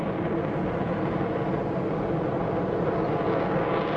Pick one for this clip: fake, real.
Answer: real